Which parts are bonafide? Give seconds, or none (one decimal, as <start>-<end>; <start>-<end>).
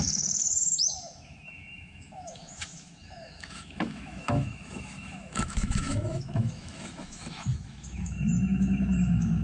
none